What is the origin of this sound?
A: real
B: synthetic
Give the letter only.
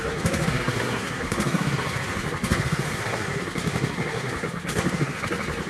B